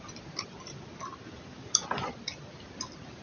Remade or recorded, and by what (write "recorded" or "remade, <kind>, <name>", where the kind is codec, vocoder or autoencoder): recorded